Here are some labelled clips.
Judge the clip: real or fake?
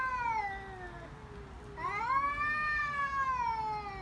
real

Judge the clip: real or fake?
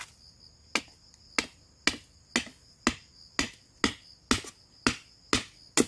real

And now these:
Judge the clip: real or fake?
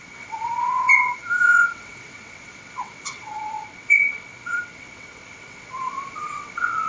fake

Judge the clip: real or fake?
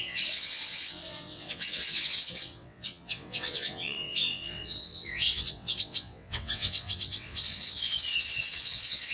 fake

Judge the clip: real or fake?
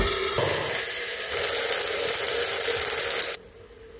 real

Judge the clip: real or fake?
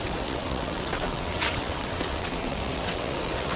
fake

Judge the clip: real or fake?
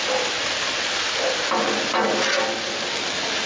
real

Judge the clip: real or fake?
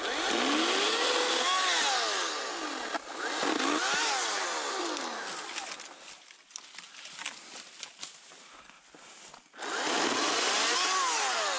real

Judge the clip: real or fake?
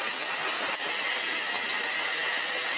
real